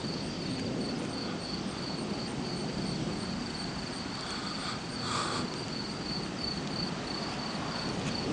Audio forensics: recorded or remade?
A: recorded